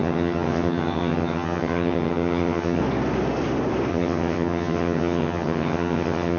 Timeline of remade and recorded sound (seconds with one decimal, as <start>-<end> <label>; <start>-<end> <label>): 0.0-2.8 remade; 2.8-3.9 recorded; 3.9-6.4 remade